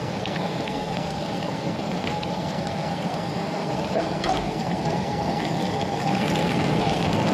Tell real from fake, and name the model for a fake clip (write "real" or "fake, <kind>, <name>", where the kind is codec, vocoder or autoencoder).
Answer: fake, codec, SNAC